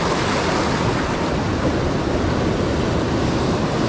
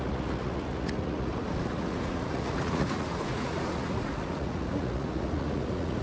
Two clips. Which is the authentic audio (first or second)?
first